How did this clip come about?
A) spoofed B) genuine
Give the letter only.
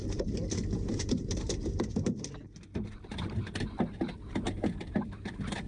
A